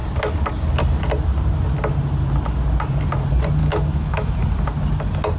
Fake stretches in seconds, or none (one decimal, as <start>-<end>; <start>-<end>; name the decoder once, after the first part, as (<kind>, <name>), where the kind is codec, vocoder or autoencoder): 3.6-4.3 (autoencoder, DAC-VAE)